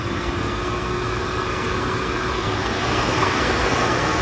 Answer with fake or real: fake